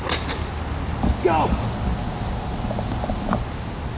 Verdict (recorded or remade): recorded